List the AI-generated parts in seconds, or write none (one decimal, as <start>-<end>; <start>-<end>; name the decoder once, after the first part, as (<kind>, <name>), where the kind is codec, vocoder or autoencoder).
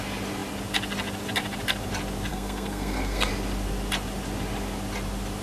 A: 2.3-3.3 (codec, SNAC)